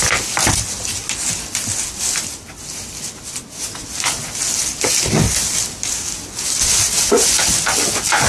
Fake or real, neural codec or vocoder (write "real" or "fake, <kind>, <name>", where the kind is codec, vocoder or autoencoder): real